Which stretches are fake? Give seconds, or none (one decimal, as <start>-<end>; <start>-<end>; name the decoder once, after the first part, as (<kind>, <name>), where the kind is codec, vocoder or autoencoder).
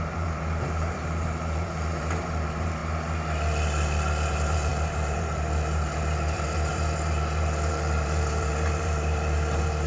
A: 0.0-2.8 (vocoder, BigVGAN v2); 4.3-9.9